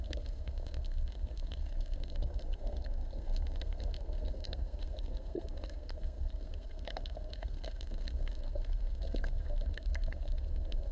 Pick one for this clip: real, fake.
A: fake